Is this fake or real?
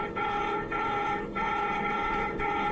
fake